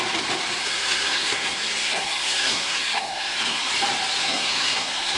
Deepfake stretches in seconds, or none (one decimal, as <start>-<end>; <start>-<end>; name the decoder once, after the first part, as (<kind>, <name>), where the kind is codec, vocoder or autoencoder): 0.6-3.7 (codec, SNAC); 4.2-5.2